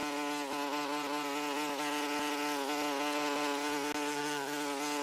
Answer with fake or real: real